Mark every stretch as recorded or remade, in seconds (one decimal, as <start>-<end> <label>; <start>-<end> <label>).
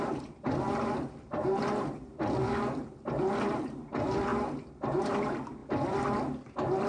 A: 0.0-6.9 remade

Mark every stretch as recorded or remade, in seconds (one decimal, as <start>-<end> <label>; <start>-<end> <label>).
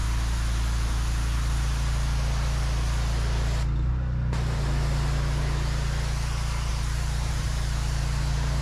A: 0.0-6.7 recorded; 6.7-8.6 remade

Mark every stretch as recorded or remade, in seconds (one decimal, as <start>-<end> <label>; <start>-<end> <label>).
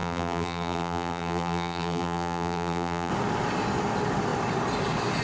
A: 0.0-3.1 remade; 3.1-5.2 recorded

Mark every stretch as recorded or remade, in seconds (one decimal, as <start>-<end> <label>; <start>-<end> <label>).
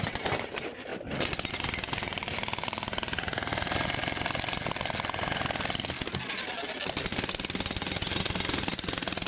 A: 0.0-0.9 remade; 0.9-1.5 recorded; 1.5-3.5 remade; 3.5-8.2 recorded; 8.2-9.3 remade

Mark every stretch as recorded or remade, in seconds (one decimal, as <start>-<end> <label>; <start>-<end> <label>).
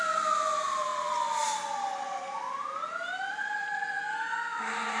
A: 0.0-5.0 recorded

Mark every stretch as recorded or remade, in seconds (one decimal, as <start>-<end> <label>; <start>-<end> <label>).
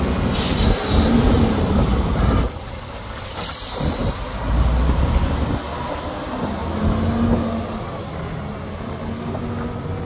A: 0.0-0.5 recorded; 0.5-5.3 remade; 5.3-10.1 recorded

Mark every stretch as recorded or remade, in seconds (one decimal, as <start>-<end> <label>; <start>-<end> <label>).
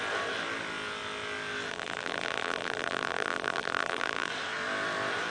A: 0.0-1.7 recorded; 1.7-4.3 remade; 4.3-5.3 recorded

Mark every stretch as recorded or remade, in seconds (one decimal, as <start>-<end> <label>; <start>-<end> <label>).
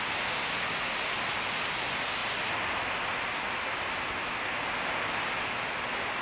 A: 0.0-6.2 recorded